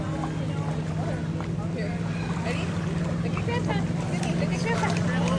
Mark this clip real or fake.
real